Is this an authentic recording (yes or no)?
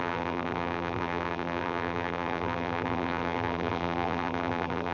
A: no